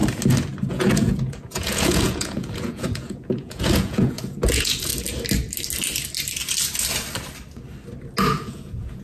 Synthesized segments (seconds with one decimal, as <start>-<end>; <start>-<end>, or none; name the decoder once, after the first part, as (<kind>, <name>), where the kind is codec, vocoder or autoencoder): 0.7-4.9 (vocoder, Vocos); 8.3-9.0